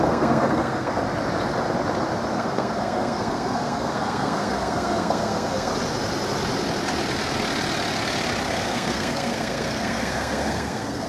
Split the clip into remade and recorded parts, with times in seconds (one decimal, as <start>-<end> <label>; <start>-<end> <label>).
0.0-1.0 remade; 1.0-2.3 recorded; 2.3-5.7 remade; 5.7-8.5 recorded; 8.5-11.1 remade